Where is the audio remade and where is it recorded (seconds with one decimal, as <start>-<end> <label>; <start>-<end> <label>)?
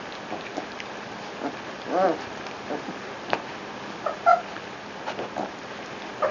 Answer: 0.0-6.3 recorded